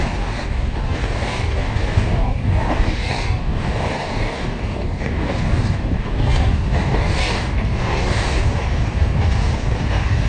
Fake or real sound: fake